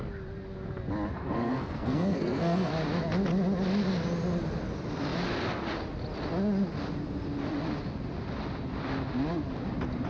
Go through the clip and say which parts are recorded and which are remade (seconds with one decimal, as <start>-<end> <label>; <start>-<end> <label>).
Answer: 0.0-1.1 recorded; 1.1-2.7 remade; 2.7-10.1 recorded